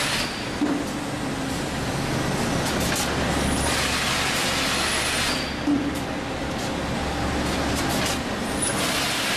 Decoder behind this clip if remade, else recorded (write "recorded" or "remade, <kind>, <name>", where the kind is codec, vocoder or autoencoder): recorded